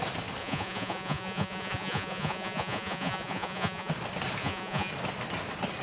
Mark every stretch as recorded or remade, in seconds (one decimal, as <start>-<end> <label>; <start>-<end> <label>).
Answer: 0.0-0.4 recorded; 0.4-3.9 remade; 3.9-4.4 recorded; 4.4-4.9 remade; 4.9-5.8 recorded